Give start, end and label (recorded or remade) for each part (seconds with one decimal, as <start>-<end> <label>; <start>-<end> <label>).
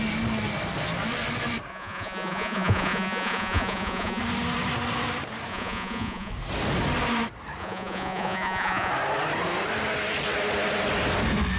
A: 0.0-1.7 recorded; 1.7-4.2 remade; 4.2-5.5 recorded; 5.5-6.3 remade; 6.3-7.6 recorded; 7.6-8.9 remade; 8.9-11.6 recorded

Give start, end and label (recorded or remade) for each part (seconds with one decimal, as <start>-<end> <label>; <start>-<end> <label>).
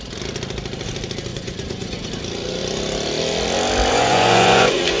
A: 0.0-1.3 recorded; 1.3-2.1 remade; 2.1-3.9 recorded; 3.9-5.0 remade